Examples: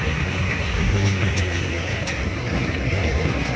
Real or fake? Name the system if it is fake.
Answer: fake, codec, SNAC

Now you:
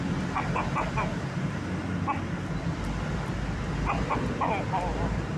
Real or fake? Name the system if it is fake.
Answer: real